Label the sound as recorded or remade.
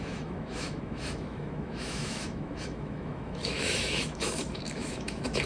remade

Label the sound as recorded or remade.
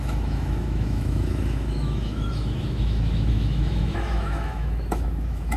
remade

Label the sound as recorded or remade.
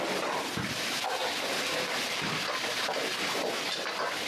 recorded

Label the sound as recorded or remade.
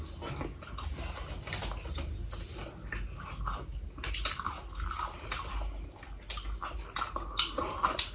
recorded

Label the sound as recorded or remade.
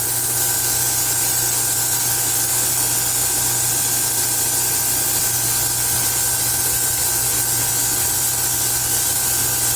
recorded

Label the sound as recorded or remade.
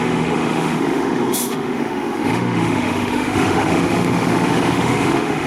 remade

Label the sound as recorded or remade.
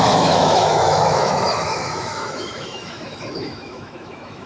remade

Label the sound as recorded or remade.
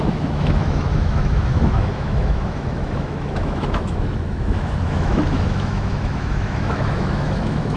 remade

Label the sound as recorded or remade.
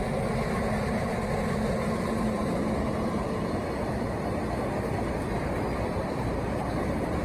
recorded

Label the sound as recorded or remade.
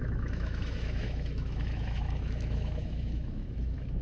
remade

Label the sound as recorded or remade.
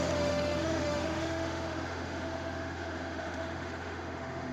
remade